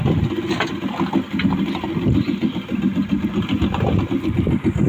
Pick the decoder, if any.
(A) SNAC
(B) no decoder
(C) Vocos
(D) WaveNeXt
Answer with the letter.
B